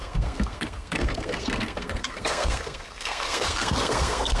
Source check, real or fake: fake